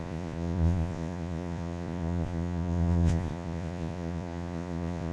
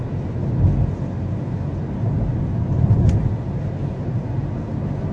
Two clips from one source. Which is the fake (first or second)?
first